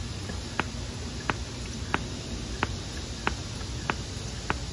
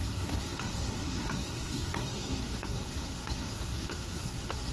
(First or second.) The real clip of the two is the first